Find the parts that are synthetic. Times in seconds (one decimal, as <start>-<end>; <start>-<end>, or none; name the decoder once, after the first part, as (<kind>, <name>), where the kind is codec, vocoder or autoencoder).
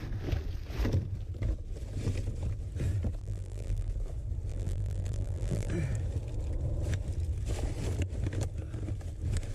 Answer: 3.2-3.9 (vocoder, BigVGAN v2); 4.5-5.7